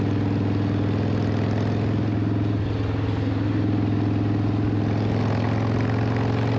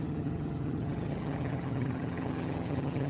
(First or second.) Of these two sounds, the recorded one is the first